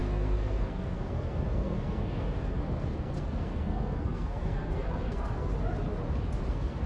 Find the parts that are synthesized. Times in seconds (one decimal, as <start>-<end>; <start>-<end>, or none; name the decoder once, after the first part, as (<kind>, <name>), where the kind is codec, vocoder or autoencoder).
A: 0.0-5.5 (codec, SNAC); 6.5-6.9